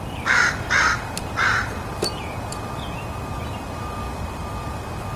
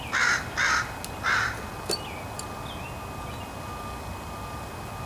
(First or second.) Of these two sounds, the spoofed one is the first